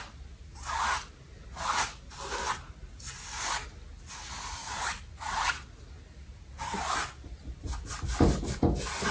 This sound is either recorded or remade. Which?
recorded